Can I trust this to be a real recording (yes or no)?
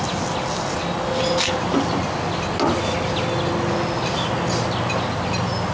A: yes